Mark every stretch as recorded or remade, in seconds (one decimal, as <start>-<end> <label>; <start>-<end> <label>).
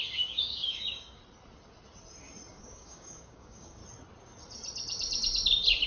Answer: 0.0-1.2 remade; 1.2-2.5 recorded; 2.5-3.8 remade; 3.8-5.9 recorded